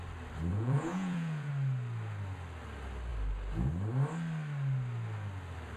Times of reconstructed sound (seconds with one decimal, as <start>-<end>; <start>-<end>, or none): 0.5-1.5